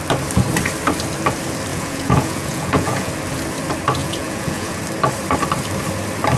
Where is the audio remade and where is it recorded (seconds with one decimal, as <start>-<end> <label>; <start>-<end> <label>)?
0.0-1.7 recorded; 1.7-3.1 remade; 3.1-4.0 recorded; 4.0-4.8 remade; 4.8-6.4 recorded